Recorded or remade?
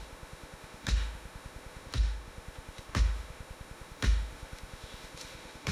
remade